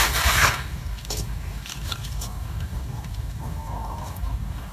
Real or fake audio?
fake